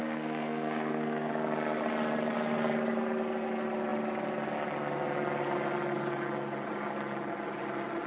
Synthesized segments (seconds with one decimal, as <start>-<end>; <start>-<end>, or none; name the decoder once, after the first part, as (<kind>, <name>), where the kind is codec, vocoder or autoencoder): 0.0-1.3 (codec, SNAC)